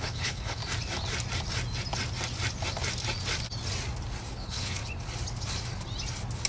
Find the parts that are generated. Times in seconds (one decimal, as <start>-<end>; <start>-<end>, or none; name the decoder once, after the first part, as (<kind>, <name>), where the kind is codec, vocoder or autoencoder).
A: 0.0-0.6 (codec, HILCodec); 4.3-4.8